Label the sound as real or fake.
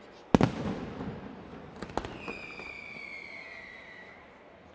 real